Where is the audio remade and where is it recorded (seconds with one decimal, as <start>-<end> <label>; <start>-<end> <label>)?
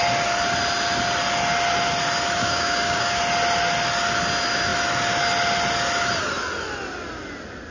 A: 0.0-2.4 recorded; 2.4-3.2 remade; 3.2-7.7 recorded